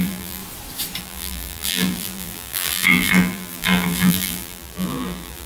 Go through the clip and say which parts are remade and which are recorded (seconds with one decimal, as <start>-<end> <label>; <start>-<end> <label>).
0.0-0.4 remade; 0.4-1.0 recorded; 1.0-5.5 remade